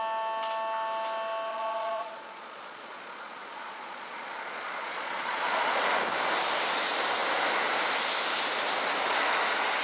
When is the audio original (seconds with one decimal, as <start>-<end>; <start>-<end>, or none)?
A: 0.0-1.5; 5.8-9.8